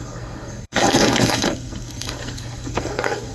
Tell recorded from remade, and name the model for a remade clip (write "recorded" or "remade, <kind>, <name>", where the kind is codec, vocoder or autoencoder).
remade, codec, SNAC